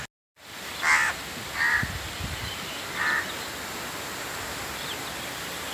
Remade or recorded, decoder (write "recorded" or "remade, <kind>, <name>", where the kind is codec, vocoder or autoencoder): recorded